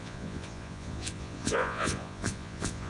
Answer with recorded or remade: remade